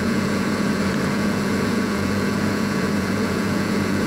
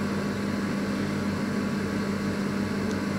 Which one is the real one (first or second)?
second